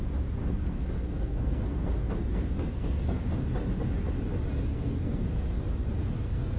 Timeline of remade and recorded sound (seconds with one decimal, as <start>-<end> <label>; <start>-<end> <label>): 0.0-0.4 recorded; 0.4-3.2 remade; 3.2-4.7 recorded; 4.7-5.6 remade; 5.6-6.0 recorded; 6.0-6.6 remade